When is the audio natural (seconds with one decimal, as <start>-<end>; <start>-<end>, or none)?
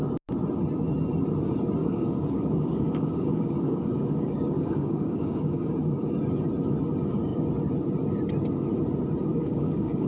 0.0-1.8; 5.7-9.3